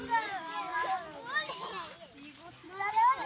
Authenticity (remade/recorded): recorded